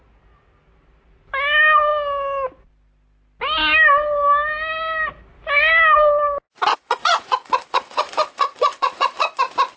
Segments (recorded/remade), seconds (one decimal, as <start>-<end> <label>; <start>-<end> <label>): 0.0-6.7 recorded; 6.7-9.4 remade; 9.4-9.8 recorded